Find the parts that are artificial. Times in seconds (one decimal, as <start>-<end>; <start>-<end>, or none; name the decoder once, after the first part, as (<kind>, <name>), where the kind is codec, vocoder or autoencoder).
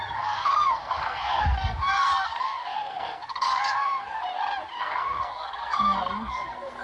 0.0-4.2 (codec, SNAC); 4.8-6.8